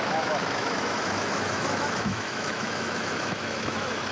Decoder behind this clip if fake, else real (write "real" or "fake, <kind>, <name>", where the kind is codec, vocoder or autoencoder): fake, autoencoder, DAC-VAE